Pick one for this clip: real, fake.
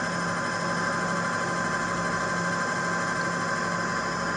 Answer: real